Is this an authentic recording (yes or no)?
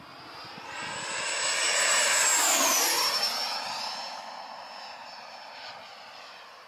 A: yes